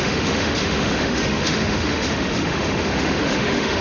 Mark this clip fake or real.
fake